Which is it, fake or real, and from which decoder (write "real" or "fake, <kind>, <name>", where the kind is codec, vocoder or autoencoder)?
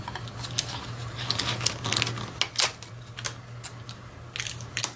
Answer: real